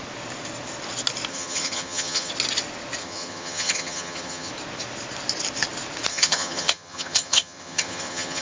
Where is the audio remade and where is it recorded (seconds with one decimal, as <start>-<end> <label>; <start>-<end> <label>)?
0.0-1.3 recorded; 1.3-2.3 remade; 2.3-3.0 recorded; 3.0-4.5 remade; 4.5-6.1 recorded; 6.1-8.4 remade